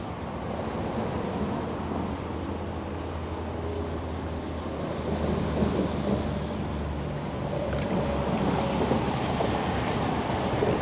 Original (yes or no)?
yes